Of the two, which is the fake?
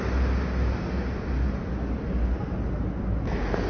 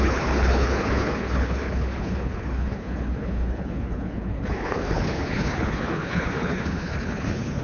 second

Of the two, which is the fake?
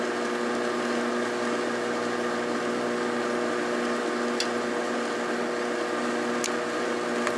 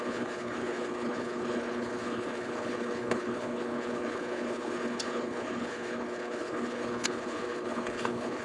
second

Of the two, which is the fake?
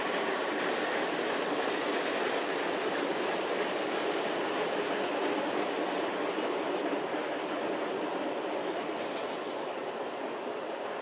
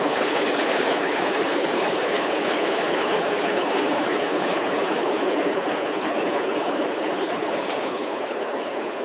second